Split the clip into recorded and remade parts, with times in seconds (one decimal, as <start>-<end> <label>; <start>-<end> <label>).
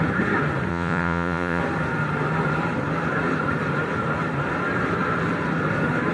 0.0-0.7 recorded; 0.7-1.6 remade; 1.6-6.1 recorded